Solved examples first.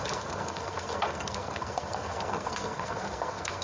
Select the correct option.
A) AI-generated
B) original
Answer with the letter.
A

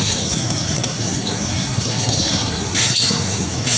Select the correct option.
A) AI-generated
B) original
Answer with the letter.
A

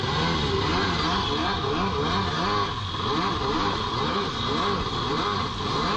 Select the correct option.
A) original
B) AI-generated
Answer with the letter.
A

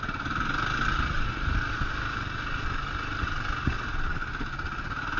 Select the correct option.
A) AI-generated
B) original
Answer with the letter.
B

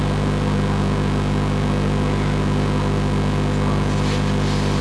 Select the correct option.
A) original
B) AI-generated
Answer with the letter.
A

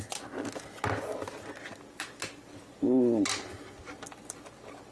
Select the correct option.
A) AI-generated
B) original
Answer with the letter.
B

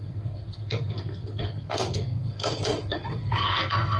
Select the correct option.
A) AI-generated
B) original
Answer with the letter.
A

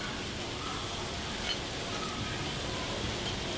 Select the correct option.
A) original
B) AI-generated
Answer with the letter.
A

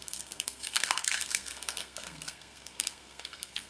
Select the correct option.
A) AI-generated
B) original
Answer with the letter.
A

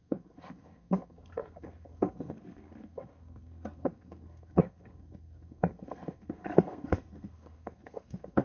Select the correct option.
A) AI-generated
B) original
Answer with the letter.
A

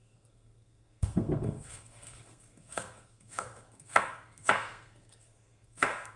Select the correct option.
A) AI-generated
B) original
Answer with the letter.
A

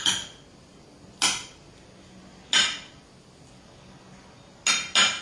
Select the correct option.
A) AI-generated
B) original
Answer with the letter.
B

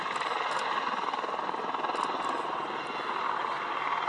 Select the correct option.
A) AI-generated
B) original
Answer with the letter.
B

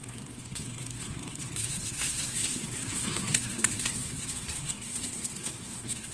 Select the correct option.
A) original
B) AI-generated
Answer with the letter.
B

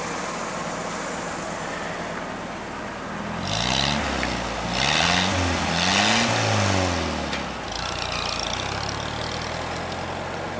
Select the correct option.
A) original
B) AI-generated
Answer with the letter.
A